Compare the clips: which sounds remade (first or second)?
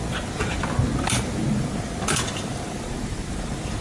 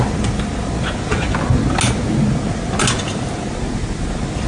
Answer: first